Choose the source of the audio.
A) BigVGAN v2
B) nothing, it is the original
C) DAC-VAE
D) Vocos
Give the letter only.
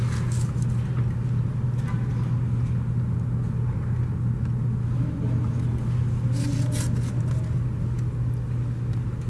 B